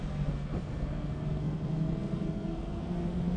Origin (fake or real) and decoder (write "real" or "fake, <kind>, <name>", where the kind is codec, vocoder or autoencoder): fake, codec, SNAC